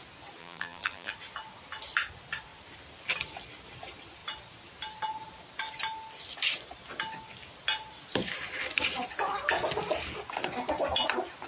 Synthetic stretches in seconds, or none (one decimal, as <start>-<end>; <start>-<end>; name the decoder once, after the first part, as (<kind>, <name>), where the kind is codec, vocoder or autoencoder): 0.4-1.1 (vocoder, BigVGAN v2)